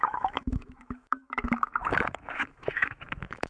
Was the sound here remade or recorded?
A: remade